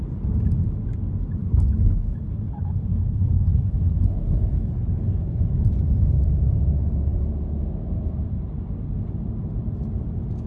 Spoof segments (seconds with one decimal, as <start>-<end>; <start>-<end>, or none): 1.4-5.4